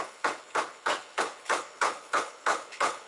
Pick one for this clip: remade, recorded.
remade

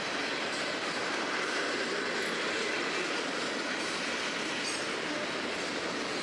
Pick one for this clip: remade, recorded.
recorded